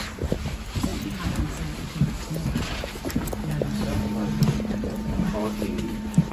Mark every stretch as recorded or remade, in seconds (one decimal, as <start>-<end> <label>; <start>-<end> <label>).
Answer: 0.0-0.9 remade; 0.9-4.7 recorded; 4.7-6.3 remade